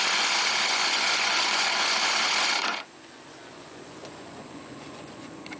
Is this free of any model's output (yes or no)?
no